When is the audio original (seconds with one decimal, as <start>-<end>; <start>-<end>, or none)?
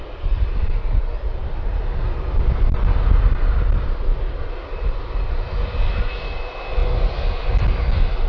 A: 0.0-8.3